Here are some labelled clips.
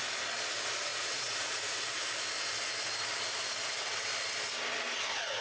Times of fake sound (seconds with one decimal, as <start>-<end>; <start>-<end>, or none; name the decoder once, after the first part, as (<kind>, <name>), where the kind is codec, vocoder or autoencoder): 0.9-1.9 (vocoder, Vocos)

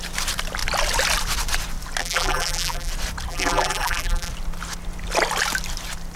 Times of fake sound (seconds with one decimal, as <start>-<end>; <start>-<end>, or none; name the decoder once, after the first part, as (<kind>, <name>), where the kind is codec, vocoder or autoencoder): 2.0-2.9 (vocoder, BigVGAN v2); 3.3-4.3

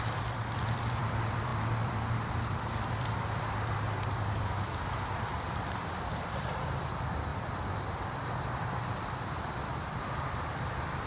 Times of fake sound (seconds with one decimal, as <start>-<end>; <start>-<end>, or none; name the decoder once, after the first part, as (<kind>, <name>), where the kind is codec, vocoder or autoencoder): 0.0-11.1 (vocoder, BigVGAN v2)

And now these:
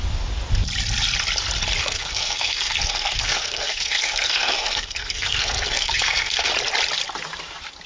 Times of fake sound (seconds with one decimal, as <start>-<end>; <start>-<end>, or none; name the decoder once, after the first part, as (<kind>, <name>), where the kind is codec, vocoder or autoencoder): 1.8-6.5 (codec, SNAC)

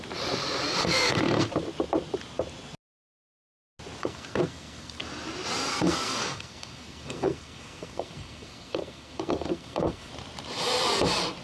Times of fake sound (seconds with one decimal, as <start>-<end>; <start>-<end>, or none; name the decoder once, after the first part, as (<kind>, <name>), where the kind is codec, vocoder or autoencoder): 0.8-1.5 (codec, SNAC); 4.0-5.0; 5.7-10.1

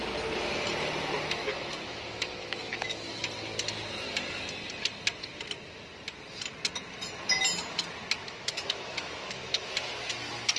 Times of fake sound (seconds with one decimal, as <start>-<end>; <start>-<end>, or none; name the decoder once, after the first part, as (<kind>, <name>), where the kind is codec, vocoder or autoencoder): 1.4-3.2 (autoencoder, DAC-VAE); 8.2-9.7

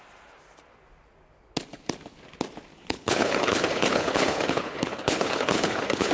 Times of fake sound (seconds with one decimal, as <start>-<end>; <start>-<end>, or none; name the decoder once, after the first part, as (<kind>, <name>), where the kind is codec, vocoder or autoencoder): 2.7-6.1 (codec, HILCodec)